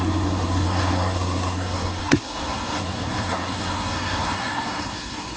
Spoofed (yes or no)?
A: yes